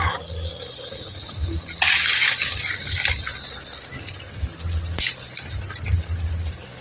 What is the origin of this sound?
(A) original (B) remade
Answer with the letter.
A